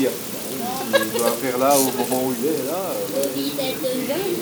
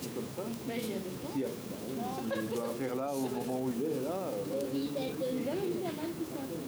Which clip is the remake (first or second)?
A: second